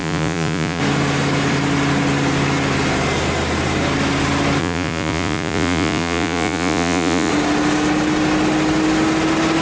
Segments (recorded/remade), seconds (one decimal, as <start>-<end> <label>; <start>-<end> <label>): 0.0-0.8 remade; 0.8-4.6 recorded; 4.6-7.3 remade; 7.3-9.6 recorded